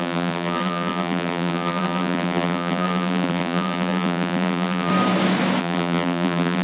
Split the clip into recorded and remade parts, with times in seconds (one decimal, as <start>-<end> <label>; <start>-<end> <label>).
0.0-4.9 remade; 4.9-5.6 recorded; 5.6-6.6 remade